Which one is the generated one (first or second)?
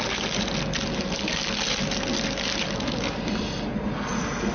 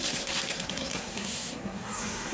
second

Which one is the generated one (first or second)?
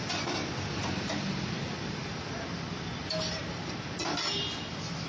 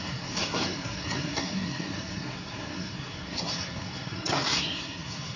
second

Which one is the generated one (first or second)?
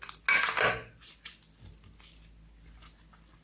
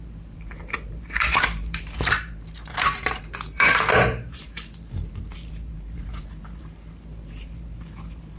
second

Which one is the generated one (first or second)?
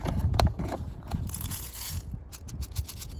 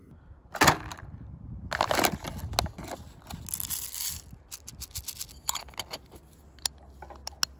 first